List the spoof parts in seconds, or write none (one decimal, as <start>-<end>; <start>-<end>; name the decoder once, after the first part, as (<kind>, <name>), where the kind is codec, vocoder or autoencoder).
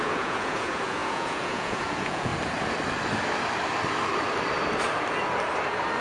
0.0-2.3 (vocoder, Vocos)